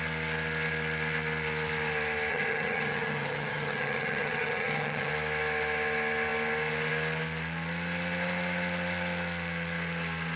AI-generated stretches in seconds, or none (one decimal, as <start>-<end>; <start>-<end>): 2.3-5.1

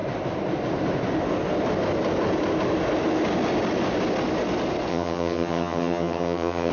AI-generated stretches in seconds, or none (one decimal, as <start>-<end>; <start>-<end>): 4.9-6.7

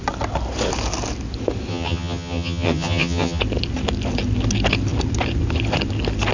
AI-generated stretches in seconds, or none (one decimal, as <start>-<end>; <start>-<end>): 1.7-3.4

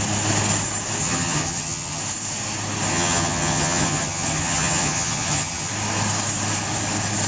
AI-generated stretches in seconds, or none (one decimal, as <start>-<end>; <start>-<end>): 1.0-2.0; 2.9-5.7

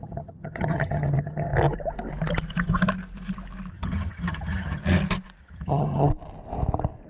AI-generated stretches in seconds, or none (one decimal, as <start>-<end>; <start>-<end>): 0.0-1.5; 3.7-4.8; 5.4-6.1

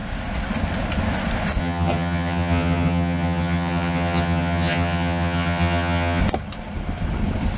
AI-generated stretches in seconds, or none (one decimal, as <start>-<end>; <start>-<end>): 1.6-6.2

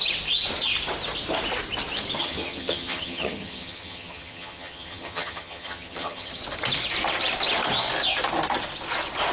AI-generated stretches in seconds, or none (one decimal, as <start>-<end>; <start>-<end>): 2.2-6.3

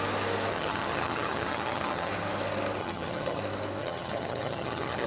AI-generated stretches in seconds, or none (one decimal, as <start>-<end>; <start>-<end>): 0.5-2.1; 2.8-3.4; 3.8-5.1